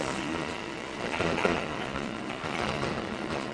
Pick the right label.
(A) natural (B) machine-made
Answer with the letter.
B